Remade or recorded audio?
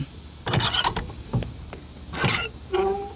recorded